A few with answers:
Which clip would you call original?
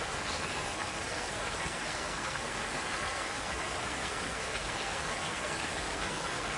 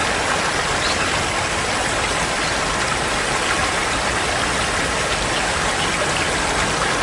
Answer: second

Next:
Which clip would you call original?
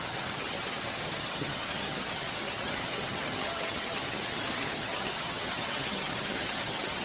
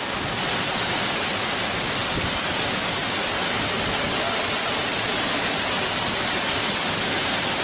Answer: second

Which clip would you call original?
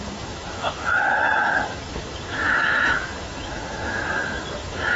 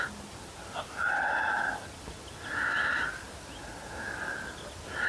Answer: second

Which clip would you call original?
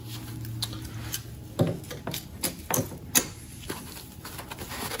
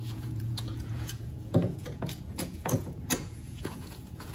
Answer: first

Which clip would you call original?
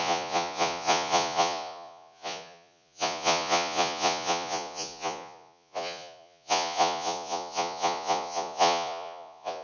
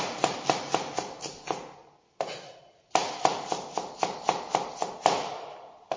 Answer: second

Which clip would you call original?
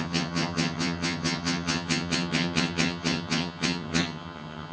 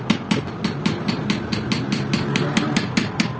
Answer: second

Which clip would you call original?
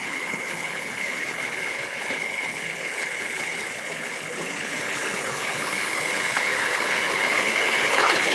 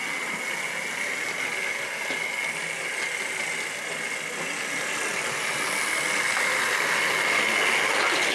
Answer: second